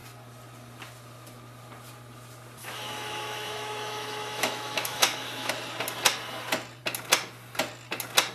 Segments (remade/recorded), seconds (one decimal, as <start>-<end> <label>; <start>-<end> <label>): 0.0-2.6 recorded; 2.6-5.5 remade; 5.5-8.3 recorded

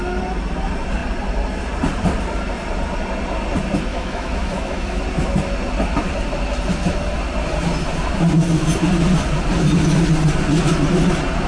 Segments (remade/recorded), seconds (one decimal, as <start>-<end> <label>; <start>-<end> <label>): 0.0-3.9 recorded; 3.9-5.0 remade; 5.0-11.5 recorded